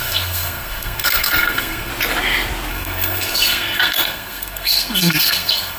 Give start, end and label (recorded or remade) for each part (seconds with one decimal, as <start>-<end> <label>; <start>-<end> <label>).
0.0-1.9 remade; 1.9-2.7 recorded; 2.7-5.8 remade